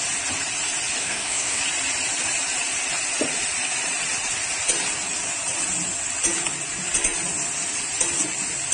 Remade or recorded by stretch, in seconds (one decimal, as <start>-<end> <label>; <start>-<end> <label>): 0.0-1.0 recorded; 1.0-1.6 remade; 1.6-8.7 recorded